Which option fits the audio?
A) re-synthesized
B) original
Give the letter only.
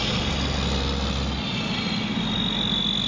B